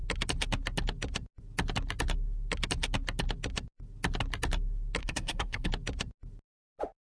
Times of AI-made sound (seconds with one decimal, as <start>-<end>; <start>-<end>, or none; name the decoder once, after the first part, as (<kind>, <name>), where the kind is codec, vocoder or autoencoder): 5.0-5.7 (codec, SNAC)